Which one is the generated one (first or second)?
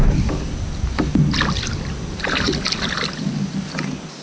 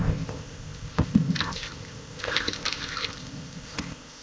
second